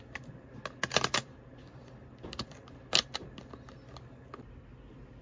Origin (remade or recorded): recorded